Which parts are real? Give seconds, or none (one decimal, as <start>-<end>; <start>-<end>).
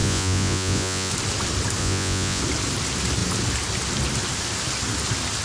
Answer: 1.1-1.8; 2.4-5.4